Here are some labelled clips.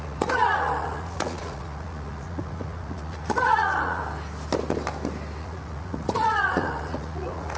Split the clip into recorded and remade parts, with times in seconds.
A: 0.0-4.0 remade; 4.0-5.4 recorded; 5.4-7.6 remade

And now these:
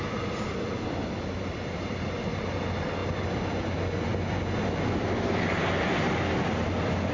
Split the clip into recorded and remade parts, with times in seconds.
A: 0.0-7.1 recorded

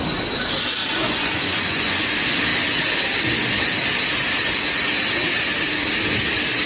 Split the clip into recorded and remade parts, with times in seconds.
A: 0.0-0.8 recorded; 0.8-2.1 remade; 2.1-6.7 recorded

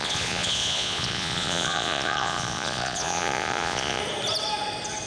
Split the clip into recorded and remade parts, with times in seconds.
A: 0.0-4.0 remade; 4.0-5.1 recorded